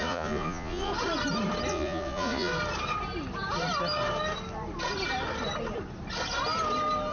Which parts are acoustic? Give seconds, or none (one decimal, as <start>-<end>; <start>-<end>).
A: 0.9-1.7; 2.5-7.1